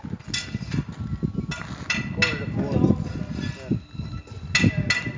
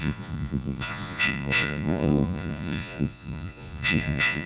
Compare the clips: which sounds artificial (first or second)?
second